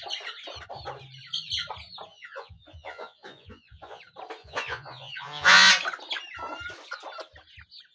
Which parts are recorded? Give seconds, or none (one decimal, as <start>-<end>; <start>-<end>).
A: 0.0-2.1; 4.0-4.4; 5.7-7.9